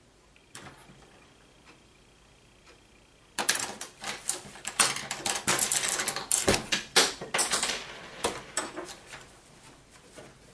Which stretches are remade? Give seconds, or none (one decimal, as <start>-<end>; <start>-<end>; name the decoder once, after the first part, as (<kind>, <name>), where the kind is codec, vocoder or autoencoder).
0.8-3.4 (vocoder, BigVGAN v2); 7.4-8.7